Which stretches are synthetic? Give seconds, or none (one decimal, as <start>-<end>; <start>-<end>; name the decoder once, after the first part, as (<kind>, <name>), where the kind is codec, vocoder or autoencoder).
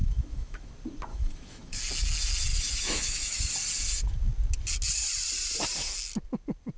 0.0-0.7 (autoencoder, DAC-VAE); 1.1-1.8; 2.5-3.5